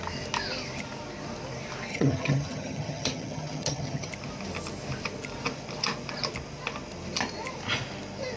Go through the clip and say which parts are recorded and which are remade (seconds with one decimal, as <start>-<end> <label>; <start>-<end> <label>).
0.0-1.9 recorded; 1.9-4.1 remade; 4.1-8.4 recorded